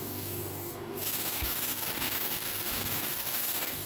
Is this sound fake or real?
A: fake